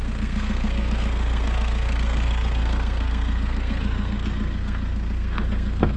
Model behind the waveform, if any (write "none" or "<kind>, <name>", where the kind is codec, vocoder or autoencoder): codec, SNAC